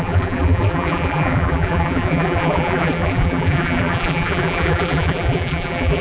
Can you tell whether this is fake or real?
fake